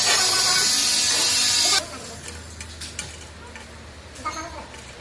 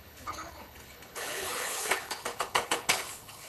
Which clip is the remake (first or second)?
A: second